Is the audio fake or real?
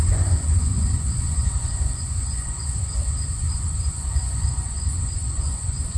fake